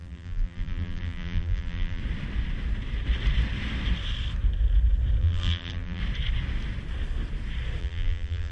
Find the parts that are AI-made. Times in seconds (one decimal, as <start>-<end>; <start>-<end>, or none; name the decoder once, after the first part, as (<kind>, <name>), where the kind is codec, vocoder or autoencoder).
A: 0.0-2.0 (vocoder, BigVGAN v2); 5.2-6.0; 7.8-8.5